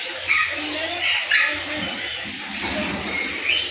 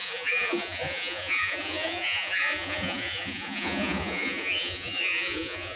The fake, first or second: second